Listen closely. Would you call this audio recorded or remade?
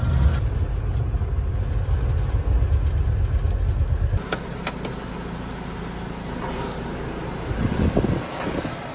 recorded